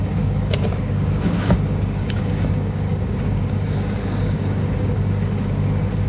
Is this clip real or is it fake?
fake